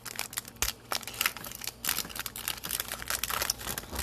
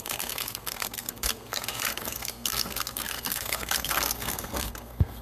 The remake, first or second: second